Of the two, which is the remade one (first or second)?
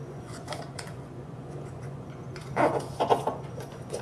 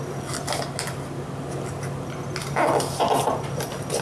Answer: first